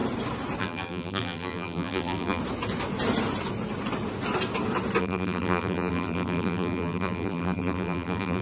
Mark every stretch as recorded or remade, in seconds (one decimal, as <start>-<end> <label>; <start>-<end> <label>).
0.0-0.6 recorded; 0.6-2.4 remade; 2.4-5.0 recorded; 5.0-8.4 remade